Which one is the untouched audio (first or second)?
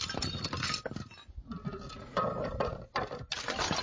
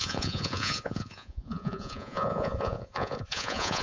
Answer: first